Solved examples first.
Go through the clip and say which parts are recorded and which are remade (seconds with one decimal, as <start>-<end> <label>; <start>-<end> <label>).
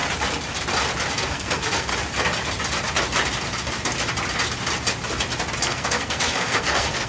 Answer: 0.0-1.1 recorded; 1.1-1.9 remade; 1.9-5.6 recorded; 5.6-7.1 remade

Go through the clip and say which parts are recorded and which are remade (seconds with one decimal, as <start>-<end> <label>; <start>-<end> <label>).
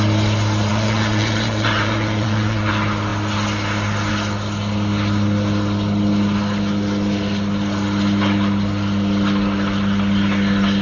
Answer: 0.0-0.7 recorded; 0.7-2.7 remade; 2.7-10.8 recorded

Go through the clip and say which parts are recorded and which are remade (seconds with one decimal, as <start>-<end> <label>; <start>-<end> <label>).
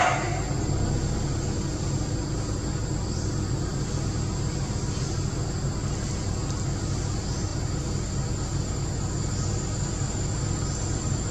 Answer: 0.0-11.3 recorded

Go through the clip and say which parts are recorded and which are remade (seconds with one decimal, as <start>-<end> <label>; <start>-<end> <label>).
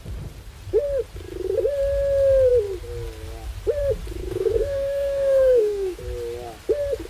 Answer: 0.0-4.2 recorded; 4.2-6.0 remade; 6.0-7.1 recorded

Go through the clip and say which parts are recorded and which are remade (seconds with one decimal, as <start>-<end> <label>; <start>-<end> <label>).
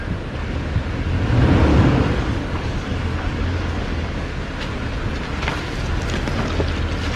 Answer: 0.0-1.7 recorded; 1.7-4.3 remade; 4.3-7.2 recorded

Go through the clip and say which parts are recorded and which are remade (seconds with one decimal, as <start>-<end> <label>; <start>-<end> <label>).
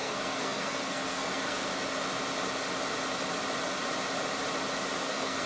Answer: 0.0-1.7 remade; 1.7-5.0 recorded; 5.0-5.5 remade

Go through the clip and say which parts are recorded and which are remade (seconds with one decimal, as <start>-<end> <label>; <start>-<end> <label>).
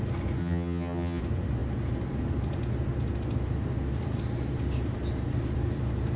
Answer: 0.0-0.4 recorded; 0.4-1.2 remade; 1.2-6.2 recorded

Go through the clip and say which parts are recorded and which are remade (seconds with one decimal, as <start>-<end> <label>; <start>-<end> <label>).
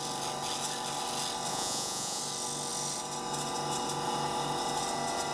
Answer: 0.0-1.5 recorded; 1.5-2.2 remade; 2.2-5.3 recorded